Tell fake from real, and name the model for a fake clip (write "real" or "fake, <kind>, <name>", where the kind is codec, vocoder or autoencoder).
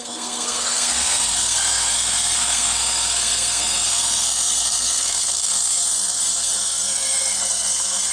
fake, codec, SNAC